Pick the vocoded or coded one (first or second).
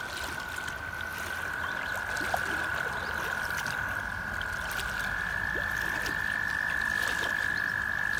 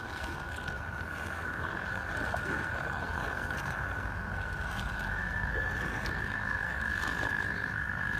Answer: second